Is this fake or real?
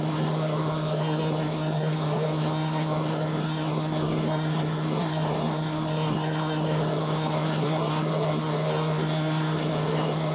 fake